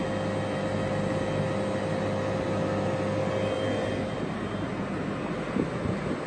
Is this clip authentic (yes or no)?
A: yes